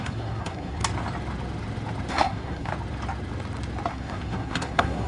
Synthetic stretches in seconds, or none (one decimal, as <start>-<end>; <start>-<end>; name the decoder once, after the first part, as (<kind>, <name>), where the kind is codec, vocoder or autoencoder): 0.0-0.8 (codec, SNAC); 2.1-2.7; 3.9-5.1